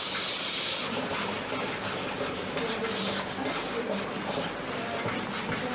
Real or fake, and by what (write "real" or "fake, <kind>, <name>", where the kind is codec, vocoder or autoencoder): real